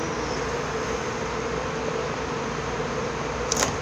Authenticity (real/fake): real